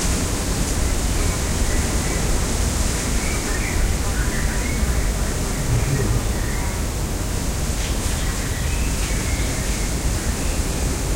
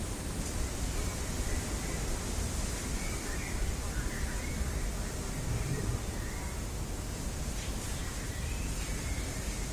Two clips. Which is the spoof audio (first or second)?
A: second